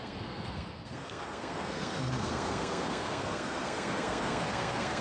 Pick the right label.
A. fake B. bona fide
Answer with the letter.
A